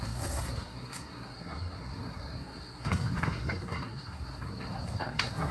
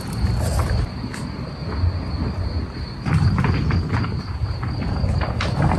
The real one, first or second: second